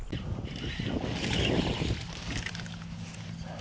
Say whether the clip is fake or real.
real